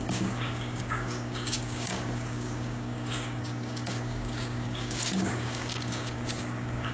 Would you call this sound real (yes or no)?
no